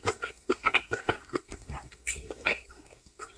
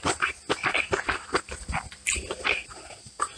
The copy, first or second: first